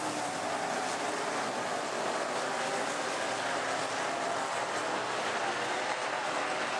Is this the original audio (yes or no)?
yes